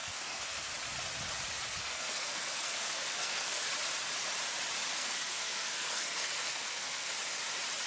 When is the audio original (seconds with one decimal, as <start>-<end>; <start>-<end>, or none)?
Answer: 0.7-1.8; 3.6-4.9; 7.1-7.9